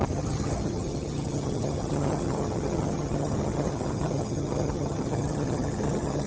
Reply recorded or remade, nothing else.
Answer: remade